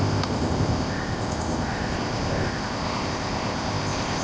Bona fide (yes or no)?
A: no